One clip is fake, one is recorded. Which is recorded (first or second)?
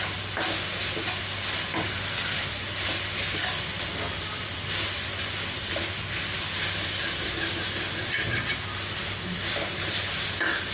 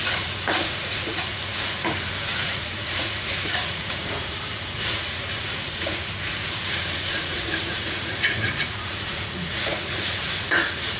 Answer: first